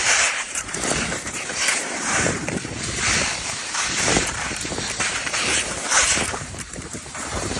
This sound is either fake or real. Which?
fake